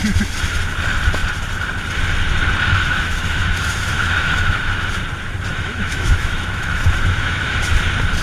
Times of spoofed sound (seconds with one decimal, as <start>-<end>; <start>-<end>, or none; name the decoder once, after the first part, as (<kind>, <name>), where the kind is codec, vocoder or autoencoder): 2.7-4.9 (autoencoder, DAC-VAE); 5.5-7.7